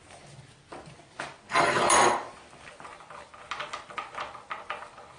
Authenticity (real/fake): real